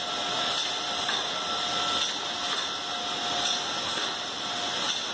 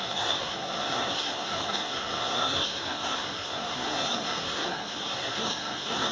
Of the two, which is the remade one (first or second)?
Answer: second